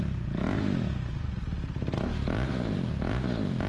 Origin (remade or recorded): recorded